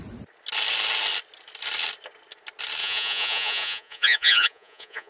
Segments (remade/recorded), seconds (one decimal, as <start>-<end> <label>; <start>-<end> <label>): 0.0-2.8 recorded; 2.8-5.1 remade